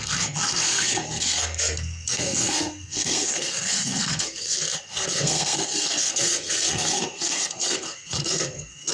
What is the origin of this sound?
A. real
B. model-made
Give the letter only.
B